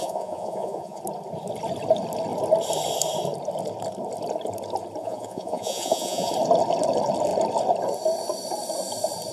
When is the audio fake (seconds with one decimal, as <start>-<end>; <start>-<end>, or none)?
0.0-1.0; 5.0-6.3